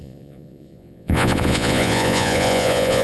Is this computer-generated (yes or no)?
yes